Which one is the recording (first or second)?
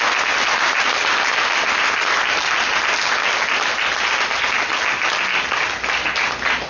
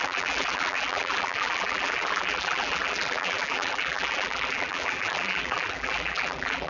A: first